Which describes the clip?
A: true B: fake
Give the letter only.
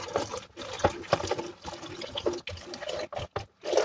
A